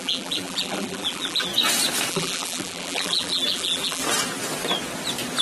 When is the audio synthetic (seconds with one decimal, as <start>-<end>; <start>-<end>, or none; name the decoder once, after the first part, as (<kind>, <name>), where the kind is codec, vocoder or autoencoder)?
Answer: 0.0-1.5 (vocoder, BigVGAN v2); 2.1-4.0